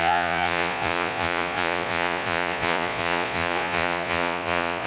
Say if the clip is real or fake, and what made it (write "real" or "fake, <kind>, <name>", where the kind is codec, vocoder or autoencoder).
fake, vocoder, Vocos